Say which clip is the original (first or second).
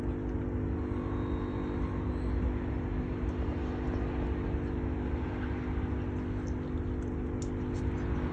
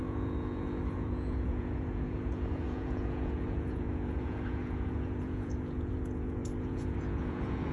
first